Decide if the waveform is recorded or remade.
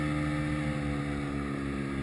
recorded